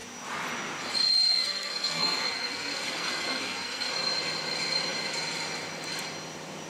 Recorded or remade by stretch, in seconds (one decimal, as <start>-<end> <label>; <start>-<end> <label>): 0.0-1.3 recorded; 1.3-3.9 remade; 3.9-6.7 recorded